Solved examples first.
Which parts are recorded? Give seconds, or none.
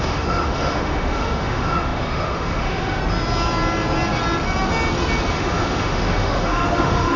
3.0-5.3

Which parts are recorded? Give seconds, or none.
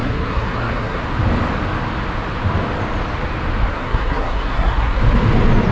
1.0-3.7; 5.0-5.7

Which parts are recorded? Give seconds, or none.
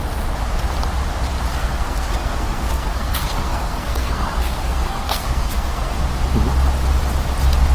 0.0-1.5; 6.0-7.7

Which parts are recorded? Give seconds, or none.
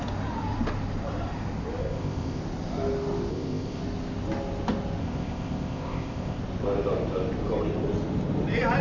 0.0-1.8; 2.4-3.3; 3.8-5.0; 6.4-8.8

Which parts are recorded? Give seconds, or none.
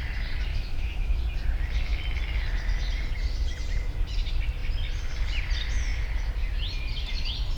0.0-0.5; 1.2-7.6